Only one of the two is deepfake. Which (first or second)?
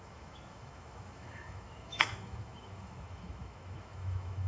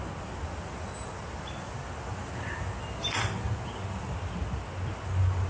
first